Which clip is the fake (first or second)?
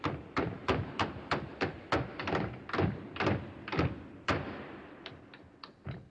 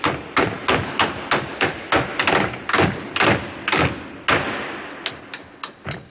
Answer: first